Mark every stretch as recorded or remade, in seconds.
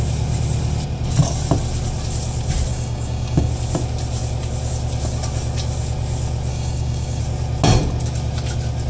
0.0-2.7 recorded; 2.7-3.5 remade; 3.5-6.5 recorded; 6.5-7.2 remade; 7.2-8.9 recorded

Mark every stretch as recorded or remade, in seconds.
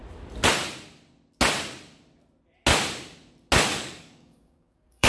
0.0-3.7 recorded; 3.7-5.1 remade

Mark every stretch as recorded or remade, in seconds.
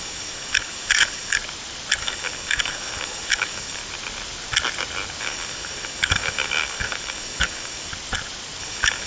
0.0-1.4 remade; 1.4-2.0 recorded; 2.0-3.8 remade; 3.8-5.2 recorded; 5.2-7.9 remade; 7.9-8.6 recorded; 8.6-9.1 remade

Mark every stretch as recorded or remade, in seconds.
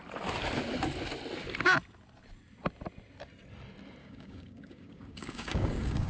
0.0-4.0 recorded; 4.0-6.1 remade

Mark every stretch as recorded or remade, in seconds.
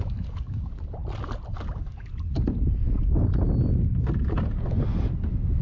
0.0-1.0 remade; 1.0-1.5 recorded; 1.5-2.1 remade; 2.1-5.6 recorded